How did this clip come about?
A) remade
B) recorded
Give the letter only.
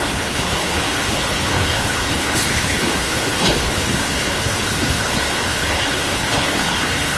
A